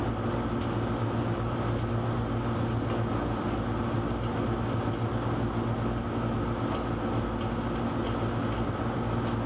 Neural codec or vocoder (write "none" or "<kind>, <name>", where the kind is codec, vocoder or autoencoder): none